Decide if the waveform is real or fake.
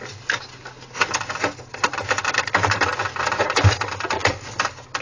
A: real